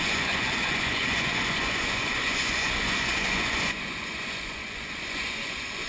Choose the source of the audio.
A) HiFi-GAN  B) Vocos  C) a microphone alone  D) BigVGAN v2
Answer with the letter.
B